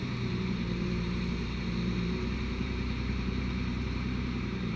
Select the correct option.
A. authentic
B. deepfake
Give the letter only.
B